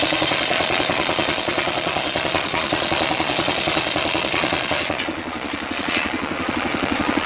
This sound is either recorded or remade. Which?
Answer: remade